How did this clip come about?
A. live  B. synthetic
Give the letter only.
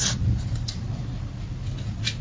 A